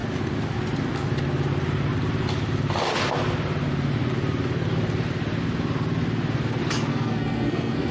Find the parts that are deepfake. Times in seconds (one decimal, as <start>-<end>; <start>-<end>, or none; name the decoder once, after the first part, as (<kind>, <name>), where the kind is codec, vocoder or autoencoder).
6.9-7.9 (codec, SNAC)